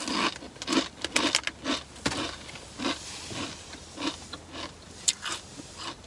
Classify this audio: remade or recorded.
recorded